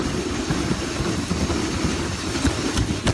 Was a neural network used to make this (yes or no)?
no